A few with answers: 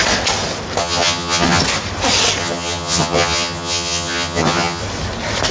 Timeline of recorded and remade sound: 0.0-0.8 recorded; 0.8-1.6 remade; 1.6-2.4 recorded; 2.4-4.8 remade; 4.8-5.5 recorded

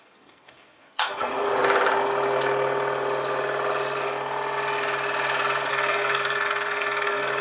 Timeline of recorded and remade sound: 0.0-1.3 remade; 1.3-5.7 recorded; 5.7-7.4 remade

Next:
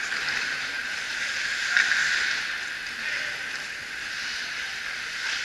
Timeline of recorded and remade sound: 0.0-5.4 recorded

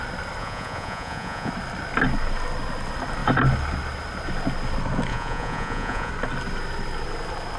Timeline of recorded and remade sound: 0.0-0.4 recorded; 0.4-1.5 remade; 1.5-5.1 recorded; 5.1-6.1 remade; 6.1-7.6 recorded